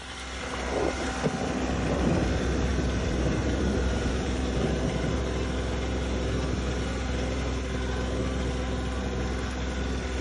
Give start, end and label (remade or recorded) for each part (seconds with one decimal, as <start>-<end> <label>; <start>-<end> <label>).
0.0-2.7 recorded; 2.7-5.2 remade; 5.2-10.2 recorded